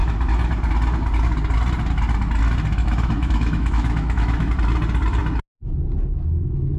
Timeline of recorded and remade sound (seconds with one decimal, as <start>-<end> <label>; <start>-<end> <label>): 0.0-2.8 recorded; 2.8-4.5 remade; 4.5-6.8 recorded